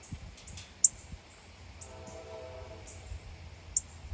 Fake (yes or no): no